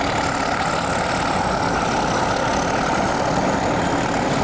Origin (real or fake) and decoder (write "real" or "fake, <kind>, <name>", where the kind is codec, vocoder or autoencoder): real